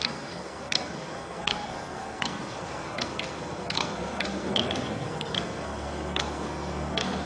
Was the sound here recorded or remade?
remade